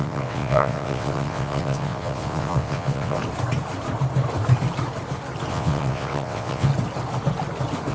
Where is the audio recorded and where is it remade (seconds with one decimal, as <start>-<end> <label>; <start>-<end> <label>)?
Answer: 0.0-3.2 remade; 3.2-5.5 recorded; 5.5-6.7 remade; 6.7-7.9 recorded